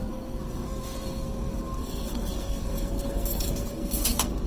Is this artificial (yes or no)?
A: yes